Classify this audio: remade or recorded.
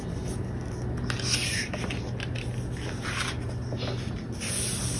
recorded